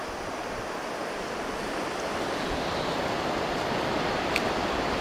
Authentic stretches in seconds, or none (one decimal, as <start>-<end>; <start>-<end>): 0.0-1.0; 4.0-5.0